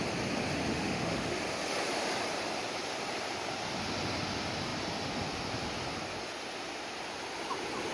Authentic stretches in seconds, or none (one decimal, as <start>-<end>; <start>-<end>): 0.0-0.7; 1.4-7.9